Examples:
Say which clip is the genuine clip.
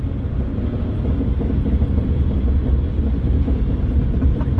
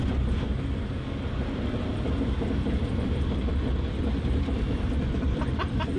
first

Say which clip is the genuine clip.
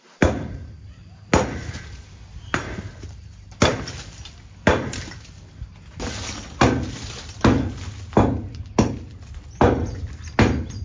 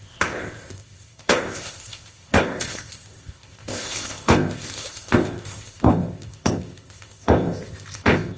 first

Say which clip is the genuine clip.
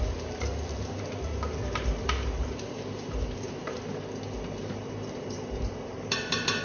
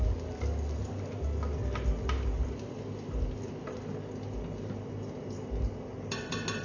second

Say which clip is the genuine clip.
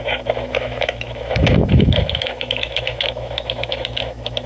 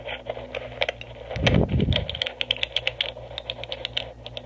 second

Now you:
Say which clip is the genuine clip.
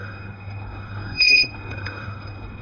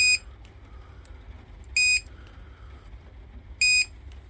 second